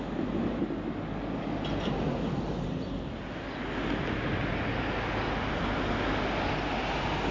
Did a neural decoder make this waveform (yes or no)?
no